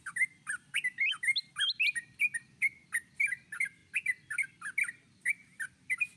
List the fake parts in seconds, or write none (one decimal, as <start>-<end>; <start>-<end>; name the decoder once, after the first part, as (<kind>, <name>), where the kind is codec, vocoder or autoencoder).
none